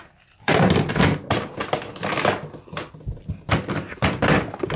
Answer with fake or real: real